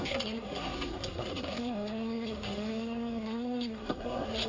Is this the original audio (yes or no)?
no